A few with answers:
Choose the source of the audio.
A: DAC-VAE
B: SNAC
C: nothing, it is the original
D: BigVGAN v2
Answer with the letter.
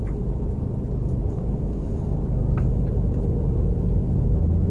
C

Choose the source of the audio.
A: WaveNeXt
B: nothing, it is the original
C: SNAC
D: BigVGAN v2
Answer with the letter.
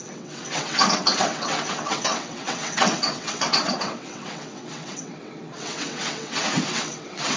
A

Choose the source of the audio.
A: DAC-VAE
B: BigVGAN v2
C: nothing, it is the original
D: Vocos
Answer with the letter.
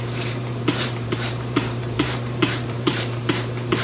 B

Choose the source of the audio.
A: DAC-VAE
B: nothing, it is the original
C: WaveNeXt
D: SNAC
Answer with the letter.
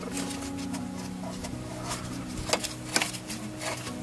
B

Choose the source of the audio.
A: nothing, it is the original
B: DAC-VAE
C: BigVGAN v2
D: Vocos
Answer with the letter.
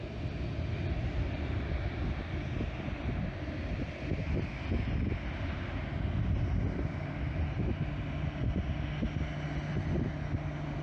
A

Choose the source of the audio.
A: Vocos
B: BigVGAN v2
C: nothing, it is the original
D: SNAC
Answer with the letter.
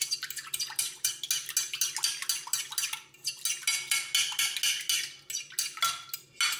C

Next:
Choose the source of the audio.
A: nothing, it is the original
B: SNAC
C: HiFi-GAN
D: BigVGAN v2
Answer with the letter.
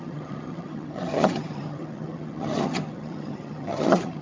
C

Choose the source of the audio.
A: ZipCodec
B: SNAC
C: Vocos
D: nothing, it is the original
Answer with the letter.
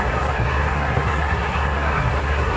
B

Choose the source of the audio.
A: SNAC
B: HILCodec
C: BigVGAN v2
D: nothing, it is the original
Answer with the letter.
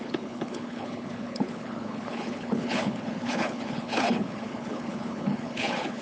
B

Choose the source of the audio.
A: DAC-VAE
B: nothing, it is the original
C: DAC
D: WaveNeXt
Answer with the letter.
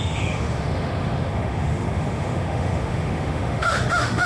A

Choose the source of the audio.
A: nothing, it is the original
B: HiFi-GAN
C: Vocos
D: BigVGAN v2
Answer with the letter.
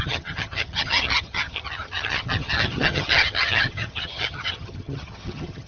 B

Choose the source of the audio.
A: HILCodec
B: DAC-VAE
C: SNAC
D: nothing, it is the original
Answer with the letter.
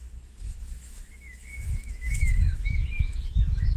B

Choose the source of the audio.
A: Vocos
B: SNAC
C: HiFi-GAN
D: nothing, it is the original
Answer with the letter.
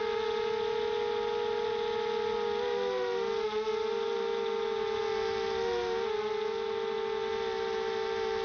D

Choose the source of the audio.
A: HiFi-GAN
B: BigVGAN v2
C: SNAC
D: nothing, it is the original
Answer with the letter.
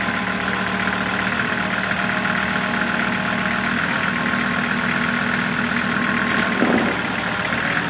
D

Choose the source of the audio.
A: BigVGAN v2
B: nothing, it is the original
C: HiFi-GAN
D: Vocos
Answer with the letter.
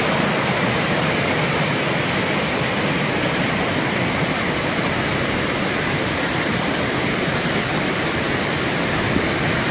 A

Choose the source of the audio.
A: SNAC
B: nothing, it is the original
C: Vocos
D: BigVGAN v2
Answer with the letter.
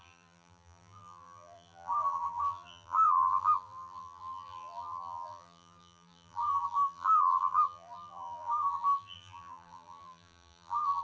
D